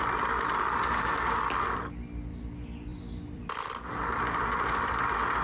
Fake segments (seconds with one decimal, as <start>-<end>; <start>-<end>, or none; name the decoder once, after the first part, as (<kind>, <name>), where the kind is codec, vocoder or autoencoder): 2.9-3.7 (vocoder, BigVGAN v2)